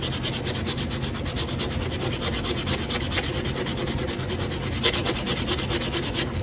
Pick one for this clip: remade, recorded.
recorded